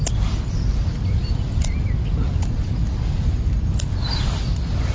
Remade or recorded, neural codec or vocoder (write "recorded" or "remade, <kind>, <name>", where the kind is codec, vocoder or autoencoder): recorded